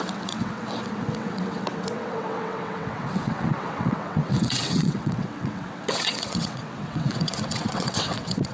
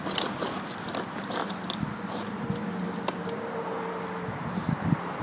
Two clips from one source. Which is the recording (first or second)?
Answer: second